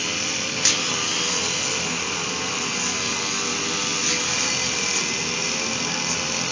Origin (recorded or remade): recorded